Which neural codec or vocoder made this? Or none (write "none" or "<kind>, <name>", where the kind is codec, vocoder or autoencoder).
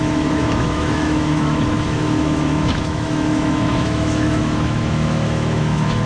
autoencoder, DAC-VAE